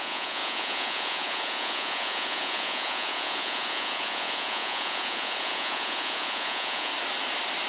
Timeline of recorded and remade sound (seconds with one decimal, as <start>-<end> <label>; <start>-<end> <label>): 0.0-6.9 remade; 6.9-7.7 recorded